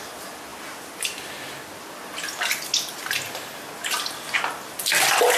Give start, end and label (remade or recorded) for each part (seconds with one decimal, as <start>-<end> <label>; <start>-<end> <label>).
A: 0.0-5.4 recorded